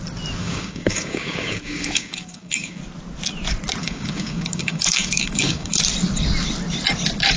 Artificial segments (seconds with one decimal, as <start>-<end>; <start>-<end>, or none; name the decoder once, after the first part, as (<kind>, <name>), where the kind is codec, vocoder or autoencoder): 0.4-2.8 (codec, DAC); 3.8-5.8